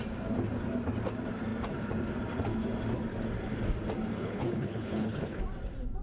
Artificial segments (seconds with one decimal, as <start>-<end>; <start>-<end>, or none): 4.1-5.4

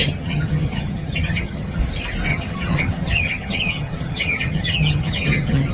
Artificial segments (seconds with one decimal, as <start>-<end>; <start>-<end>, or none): 0.0-1.8; 2.3-5.7

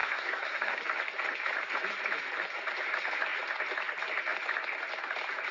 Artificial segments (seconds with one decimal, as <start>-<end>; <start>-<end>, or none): 0.0-0.8

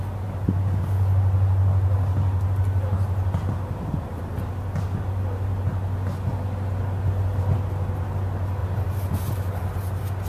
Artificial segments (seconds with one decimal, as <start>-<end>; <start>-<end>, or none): none

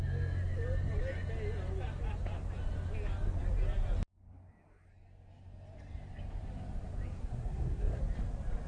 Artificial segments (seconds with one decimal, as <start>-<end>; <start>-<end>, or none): 7.2-8.0

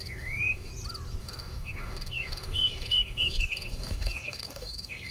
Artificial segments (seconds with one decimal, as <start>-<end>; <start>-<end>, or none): 0.0-0.7; 1.2-5.1

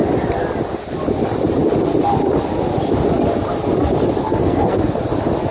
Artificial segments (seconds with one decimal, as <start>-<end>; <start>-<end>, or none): 4.4-5.0